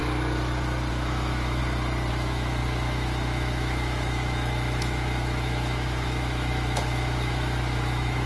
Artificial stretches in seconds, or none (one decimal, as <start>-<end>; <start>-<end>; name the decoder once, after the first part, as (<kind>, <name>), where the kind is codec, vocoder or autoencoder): 0.9-1.6 (autoencoder, DAC-VAE); 2.1-8.3